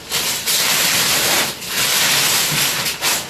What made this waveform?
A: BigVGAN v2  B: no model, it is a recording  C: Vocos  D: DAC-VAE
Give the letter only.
B